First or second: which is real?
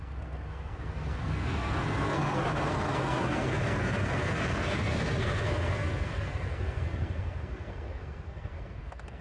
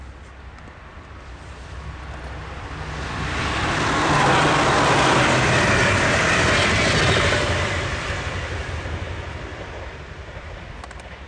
second